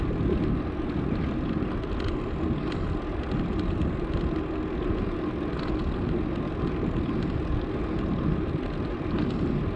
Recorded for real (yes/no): yes